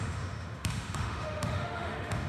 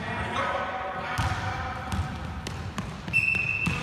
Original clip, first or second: second